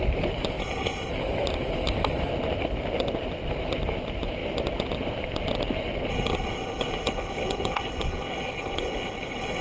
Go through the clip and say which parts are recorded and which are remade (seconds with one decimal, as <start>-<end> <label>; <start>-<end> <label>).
0.0-0.6 recorded; 0.6-1.1 remade; 1.1-6.1 recorded; 6.1-9.6 remade